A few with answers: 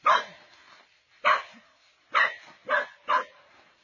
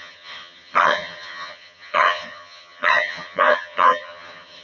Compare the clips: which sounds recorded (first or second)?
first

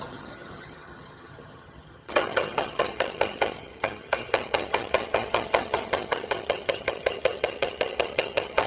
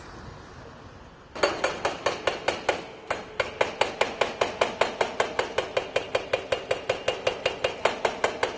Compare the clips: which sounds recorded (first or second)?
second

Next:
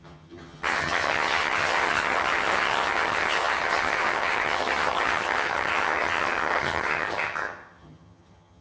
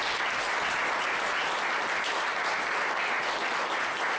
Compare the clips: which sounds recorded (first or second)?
second